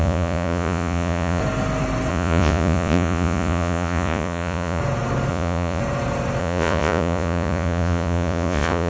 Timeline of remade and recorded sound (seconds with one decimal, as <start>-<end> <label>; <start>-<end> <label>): 0.0-1.4 remade; 1.4-2.1 recorded; 2.1-4.8 remade; 4.8-5.3 recorded; 5.3-5.8 remade; 5.8-6.4 recorded; 6.4-8.9 remade